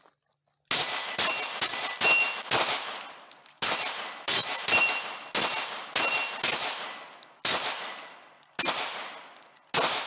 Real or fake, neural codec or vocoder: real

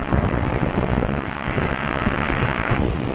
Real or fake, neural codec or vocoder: fake, vocoder, WaveNeXt